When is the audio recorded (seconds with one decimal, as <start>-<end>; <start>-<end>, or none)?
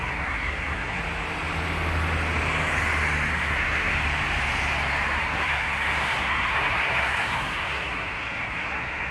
1.0-3.3; 3.9-5.2